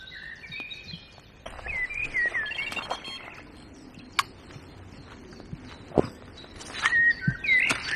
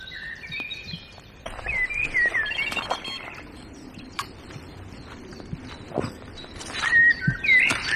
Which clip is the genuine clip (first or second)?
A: first